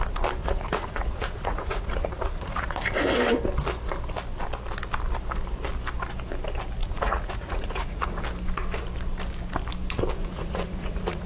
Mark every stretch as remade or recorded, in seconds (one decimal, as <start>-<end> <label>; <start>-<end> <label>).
0.0-0.4 recorded; 0.4-2.9 remade; 2.9-6.8 recorded; 6.8-8.2 remade; 8.2-10.2 recorded; 10.2-11.3 remade